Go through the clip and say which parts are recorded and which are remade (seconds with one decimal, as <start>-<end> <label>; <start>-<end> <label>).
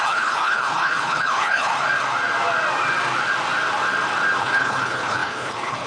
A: 0.0-1.7 remade; 1.7-4.4 recorded; 4.4-5.9 remade